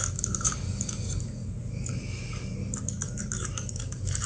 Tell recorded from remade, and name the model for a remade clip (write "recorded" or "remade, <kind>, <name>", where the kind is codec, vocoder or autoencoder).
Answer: remade, codec, DAC